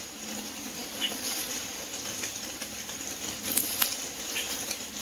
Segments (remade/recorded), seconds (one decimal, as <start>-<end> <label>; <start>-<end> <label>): 0.0-0.8 recorded; 0.8-3.8 remade; 3.8-5.0 recorded